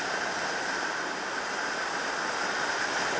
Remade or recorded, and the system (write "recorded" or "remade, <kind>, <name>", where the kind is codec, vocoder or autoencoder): recorded